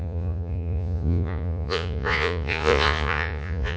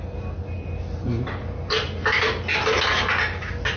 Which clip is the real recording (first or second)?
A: second